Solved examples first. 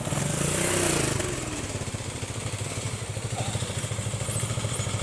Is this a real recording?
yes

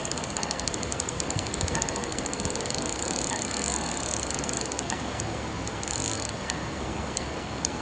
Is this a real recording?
no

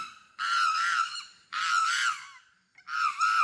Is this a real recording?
yes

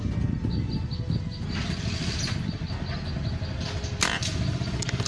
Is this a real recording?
yes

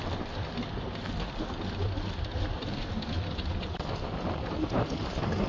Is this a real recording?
yes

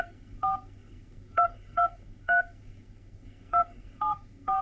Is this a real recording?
no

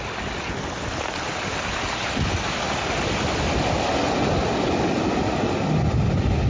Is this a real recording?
yes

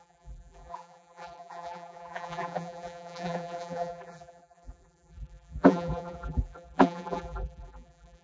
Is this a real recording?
no